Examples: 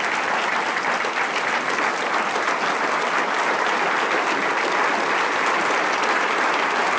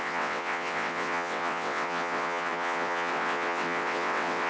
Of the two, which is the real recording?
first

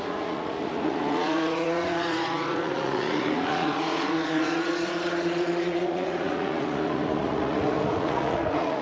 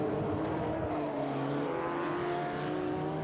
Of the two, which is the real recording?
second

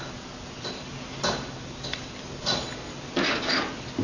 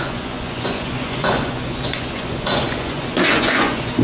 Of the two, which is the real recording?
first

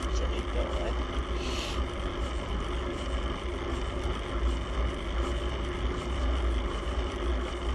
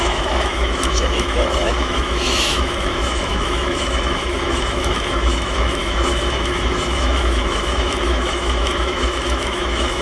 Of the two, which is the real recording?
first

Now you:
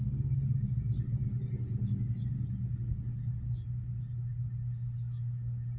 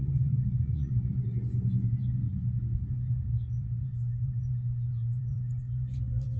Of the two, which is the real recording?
first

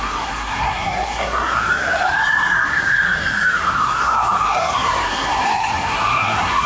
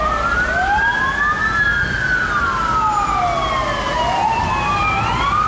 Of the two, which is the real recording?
second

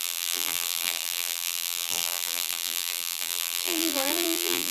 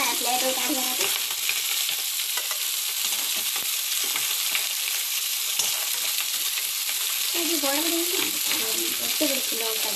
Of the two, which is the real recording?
second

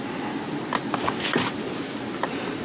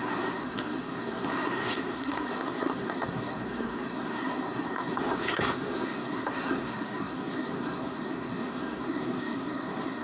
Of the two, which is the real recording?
first